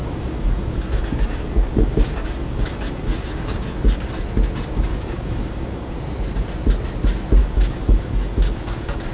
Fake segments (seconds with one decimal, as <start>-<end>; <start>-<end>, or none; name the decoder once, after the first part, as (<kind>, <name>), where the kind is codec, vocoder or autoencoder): 0.0-4.1 (codec, DAC); 4.9-6.0; 7.4-9.1